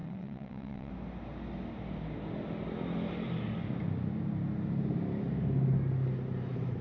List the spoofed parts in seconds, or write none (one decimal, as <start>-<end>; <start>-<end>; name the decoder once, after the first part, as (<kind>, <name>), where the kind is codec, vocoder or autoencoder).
0.0-0.9 (vocoder, WaveNeXt)

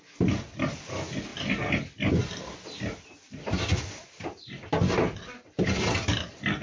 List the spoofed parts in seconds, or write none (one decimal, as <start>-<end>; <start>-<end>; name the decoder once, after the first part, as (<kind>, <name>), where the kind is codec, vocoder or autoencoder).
none

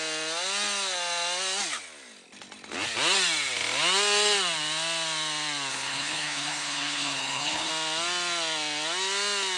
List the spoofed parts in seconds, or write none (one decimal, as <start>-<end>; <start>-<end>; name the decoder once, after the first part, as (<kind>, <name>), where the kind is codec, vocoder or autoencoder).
5.7-7.7 (codec, HILCodec)

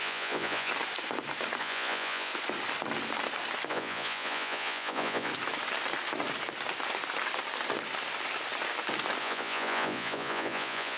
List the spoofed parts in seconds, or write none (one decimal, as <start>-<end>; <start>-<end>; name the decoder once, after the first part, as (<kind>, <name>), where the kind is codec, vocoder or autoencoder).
0.0-0.7 (vocoder, Vocos); 1.6-2.3; 3.7-5.3; 9.2-11.0

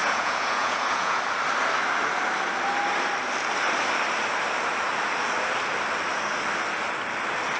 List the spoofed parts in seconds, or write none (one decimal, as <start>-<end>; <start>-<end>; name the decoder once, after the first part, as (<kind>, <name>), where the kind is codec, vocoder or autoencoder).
0.0-1.2 (vocoder, Vocos)